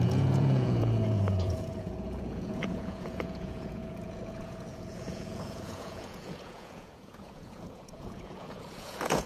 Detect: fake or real fake